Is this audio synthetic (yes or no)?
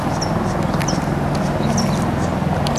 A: no